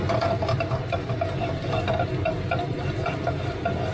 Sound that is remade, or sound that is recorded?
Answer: recorded